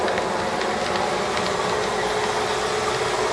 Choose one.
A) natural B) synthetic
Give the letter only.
A